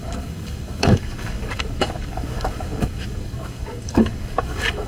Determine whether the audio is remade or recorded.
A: remade